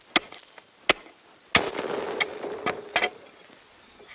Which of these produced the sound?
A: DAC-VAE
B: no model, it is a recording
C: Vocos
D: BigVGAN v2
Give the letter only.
B